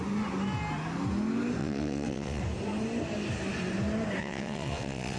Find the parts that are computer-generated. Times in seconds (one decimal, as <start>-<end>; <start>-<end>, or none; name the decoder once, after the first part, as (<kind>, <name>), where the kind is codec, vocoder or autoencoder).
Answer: 1.6-2.4 (vocoder, WaveNeXt); 4.2-5.2

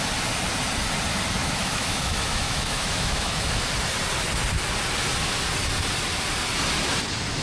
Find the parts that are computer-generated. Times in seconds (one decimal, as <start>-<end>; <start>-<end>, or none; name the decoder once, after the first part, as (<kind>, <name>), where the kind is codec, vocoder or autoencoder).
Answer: 1.4-3.6 (autoencoder, DAC-VAE)

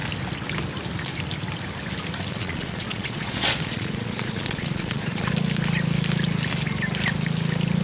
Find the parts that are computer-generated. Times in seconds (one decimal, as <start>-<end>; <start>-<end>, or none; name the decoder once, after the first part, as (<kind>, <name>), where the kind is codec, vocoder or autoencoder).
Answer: 2.3-5.3 (vocoder, Vocos)

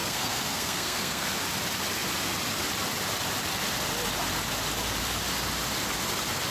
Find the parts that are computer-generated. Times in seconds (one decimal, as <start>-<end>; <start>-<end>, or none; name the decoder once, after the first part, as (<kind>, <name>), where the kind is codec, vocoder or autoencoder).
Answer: 0.0-1.3 (codec, SNAC)

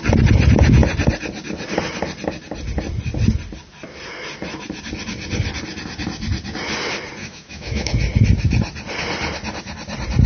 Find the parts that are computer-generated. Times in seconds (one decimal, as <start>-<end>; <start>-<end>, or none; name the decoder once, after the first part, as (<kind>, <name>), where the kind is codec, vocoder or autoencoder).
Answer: 7.2-7.9 (autoencoder, DAC-VAE)

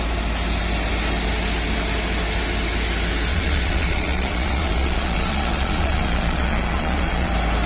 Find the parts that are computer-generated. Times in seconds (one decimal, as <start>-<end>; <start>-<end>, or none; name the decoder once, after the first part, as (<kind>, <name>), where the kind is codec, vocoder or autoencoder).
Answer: 3.3-7.3 (vocoder, Vocos)

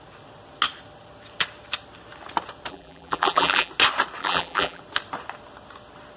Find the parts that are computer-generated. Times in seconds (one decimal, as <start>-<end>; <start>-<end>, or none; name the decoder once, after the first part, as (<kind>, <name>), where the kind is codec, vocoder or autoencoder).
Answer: 2.7-3.7 (vocoder, BigVGAN v2); 4.2-4.8